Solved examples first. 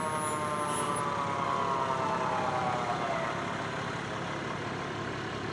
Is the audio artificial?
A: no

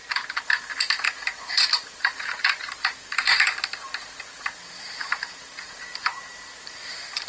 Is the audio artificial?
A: yes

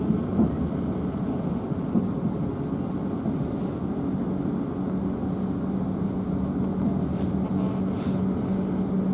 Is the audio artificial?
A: no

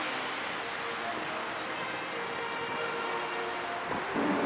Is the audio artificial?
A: no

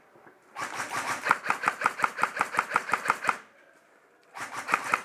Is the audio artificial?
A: no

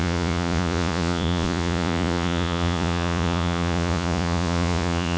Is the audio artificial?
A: yes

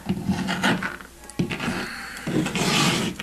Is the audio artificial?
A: no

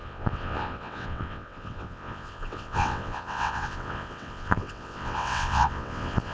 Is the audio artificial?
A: yes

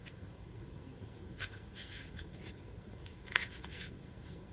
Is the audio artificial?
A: yes